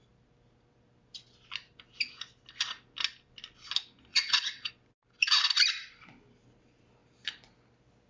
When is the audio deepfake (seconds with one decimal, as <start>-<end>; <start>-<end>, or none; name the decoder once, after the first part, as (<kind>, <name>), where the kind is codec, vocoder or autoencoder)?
4.1-4.7 (vocoder, WaveNeXt)